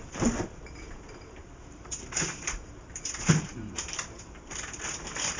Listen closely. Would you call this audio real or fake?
fake